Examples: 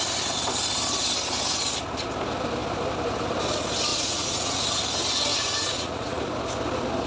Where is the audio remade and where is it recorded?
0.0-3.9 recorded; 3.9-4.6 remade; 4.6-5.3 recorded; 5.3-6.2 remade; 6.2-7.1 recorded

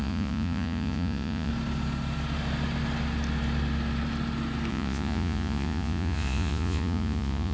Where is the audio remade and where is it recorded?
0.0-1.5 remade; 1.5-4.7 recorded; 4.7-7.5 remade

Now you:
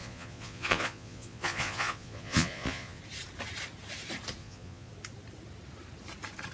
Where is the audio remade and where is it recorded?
0.0-3.0 remade; 3.0-4.4 recorded; 4.4-4.9 remade; 4.9-6.5 recorded

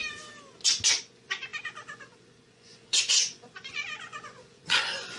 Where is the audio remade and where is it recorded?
0.0-1.0 recorded; 1.0-5.2 remade

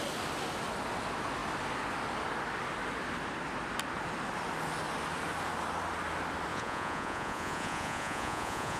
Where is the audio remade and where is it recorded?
0.0-6.5 recorded; 6.5-8.8 remade

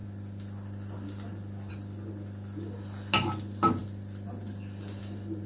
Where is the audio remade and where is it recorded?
0.0-5.5 recorded